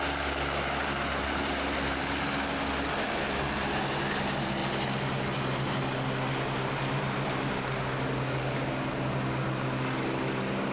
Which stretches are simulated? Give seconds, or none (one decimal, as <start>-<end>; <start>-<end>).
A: 0.8-2.3